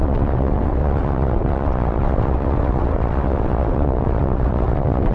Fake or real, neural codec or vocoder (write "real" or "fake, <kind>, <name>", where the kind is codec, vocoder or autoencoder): fake, vocoder, WaveNeXt